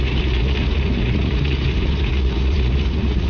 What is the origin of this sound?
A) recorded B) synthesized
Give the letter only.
B